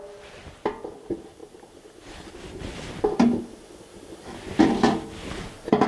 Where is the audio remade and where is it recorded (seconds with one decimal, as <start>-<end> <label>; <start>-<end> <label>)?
0.0-5.9 recorded